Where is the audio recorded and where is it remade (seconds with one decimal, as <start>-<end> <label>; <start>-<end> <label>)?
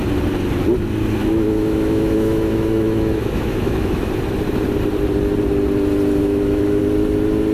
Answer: 0.0-1.2 recorded; 1.2-4.1 remade; 4.1-6.2 recorded; 6.2-6.8 remade; 6.8-7.5 recorded